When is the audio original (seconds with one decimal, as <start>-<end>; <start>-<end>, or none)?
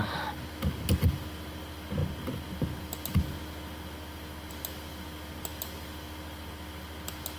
0.0-7.4